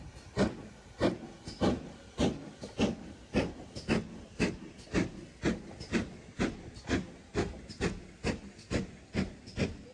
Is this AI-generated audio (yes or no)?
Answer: no